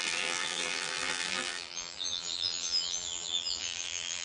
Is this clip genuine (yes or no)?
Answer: no